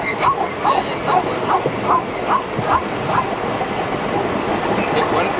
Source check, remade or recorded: recorded